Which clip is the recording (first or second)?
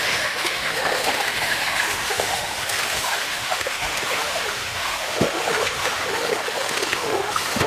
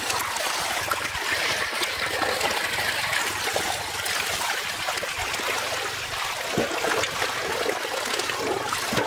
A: second